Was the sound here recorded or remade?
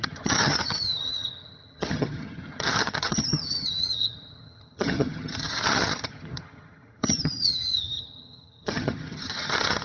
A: remade